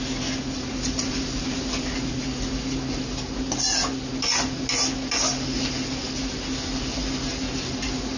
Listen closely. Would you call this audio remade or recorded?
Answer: recorded